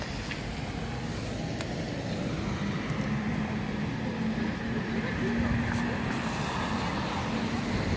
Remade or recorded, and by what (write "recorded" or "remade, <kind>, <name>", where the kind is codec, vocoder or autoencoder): recorded